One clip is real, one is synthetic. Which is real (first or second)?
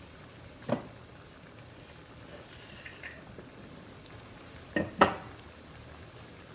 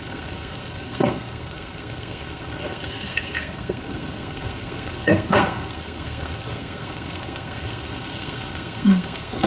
first